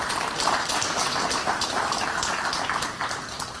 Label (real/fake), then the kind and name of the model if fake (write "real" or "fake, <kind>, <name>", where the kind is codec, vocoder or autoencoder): real